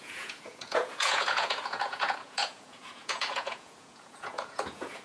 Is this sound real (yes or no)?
no